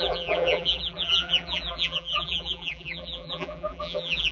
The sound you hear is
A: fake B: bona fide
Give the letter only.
A